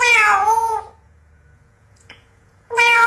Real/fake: fake